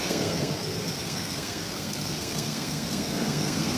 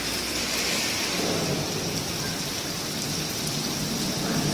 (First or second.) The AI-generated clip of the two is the first